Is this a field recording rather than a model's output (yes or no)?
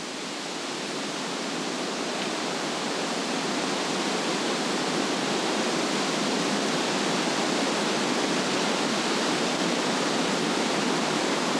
yes